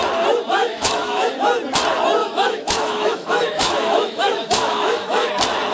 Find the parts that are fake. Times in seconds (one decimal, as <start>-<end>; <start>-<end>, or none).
0.6-1.3; 2.2-5.3